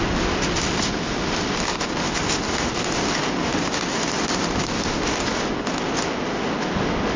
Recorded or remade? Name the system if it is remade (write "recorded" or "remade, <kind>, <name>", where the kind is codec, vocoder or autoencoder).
remade, vocoder, BigVGAN v2